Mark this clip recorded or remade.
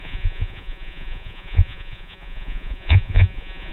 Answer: remade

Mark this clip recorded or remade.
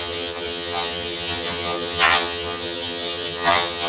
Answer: remade